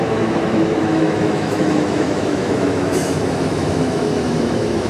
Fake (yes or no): yes